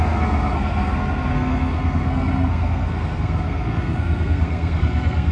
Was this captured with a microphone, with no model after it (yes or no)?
no